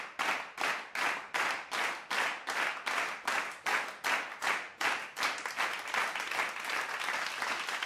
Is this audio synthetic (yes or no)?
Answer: no